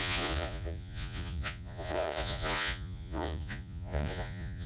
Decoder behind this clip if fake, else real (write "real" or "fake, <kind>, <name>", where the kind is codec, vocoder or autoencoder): fake, vocoder, Vocos